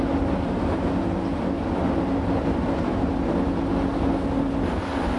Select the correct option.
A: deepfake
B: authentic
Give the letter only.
B